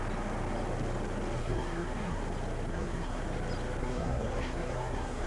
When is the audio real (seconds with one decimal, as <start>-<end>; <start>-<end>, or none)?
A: 0.0-1.4; 2.2-2.7; 3.2-3.8